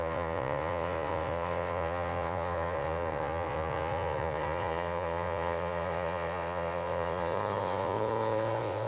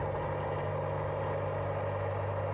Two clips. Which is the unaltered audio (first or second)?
second